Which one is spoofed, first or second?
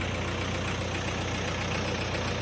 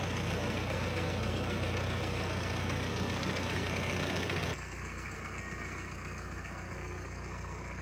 second